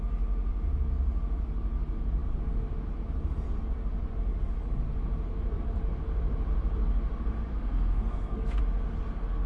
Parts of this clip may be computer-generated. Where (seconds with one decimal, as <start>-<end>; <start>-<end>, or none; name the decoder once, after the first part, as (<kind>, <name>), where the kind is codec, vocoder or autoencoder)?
7.5-8.6 (codec, SNAC)